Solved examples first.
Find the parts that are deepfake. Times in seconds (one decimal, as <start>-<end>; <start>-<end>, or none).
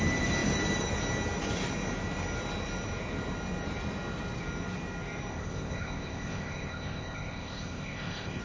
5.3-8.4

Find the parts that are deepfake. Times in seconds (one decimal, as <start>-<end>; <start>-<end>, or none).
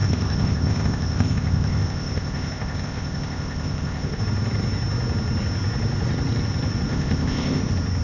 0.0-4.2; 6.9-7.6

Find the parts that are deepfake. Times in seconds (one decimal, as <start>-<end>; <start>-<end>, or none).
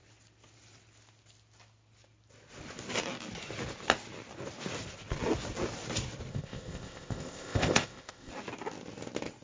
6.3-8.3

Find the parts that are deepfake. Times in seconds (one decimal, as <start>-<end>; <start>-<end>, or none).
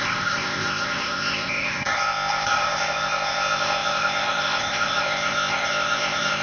0.0-6.4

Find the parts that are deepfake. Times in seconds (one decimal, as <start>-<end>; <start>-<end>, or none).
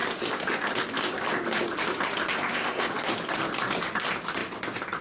2.3-2.9